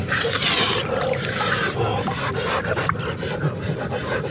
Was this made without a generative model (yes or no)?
yes